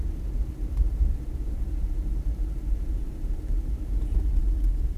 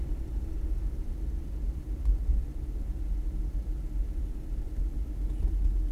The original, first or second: second